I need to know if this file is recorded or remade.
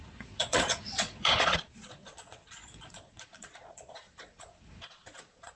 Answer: remade